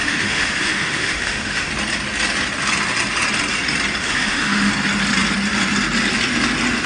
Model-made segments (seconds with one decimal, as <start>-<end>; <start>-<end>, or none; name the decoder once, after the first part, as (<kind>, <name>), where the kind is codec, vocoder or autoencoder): 0.0-1.7 (autoencoder, DAC-VAE); 4.0-4.7